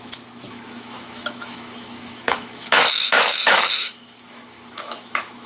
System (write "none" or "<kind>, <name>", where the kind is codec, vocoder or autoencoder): autoencoder, DAC-VAE